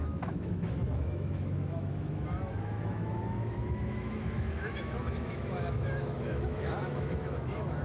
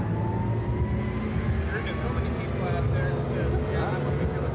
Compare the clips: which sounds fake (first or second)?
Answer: first